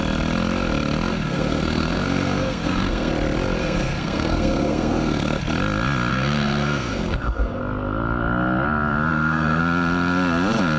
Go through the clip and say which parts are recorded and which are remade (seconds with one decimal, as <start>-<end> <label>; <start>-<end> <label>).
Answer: 0.0-1.1 recorded; 1.1-3.1 remade; 3.1-3.6 recorded; 3.6-5.4 remade; 5.4-6.1 recorded; 6.1-7.6 remade; 7.6-9.1 recorded; 9.1-9.6 remade; 9.6-10.8 recorded